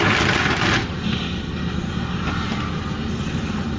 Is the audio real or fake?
real